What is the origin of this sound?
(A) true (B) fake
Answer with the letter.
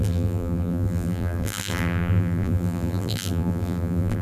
B